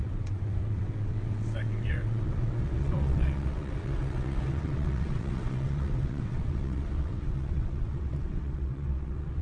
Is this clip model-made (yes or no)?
yes